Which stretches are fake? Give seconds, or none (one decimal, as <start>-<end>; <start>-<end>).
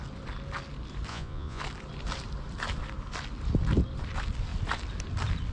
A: 1.1-1.6